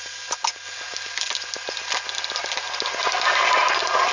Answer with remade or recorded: recorded